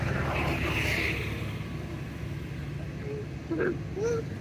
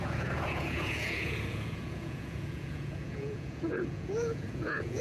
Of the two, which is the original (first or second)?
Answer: first